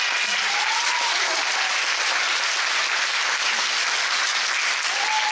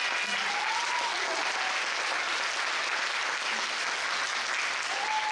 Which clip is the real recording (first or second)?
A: second